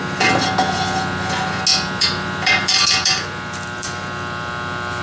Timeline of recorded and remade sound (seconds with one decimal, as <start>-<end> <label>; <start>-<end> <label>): 0.0-1.7 recorded; 1.7-4.5 remade; 4.5-5.0 recorded